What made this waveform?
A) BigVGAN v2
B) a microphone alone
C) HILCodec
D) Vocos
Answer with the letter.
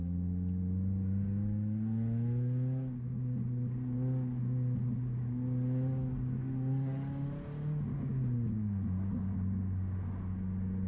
B